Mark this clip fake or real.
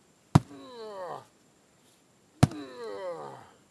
real